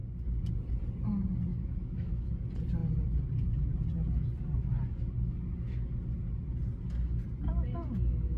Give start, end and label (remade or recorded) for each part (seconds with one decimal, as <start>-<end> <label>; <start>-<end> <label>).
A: 0.0-1.5 recorded; 1.5-2.3 remade; 2.3-8.4 recorded